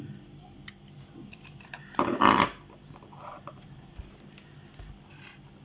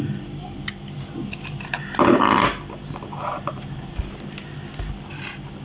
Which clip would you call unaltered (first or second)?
second